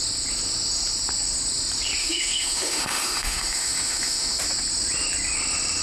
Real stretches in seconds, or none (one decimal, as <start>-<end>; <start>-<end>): 0.0-2.0; 4.4-5.8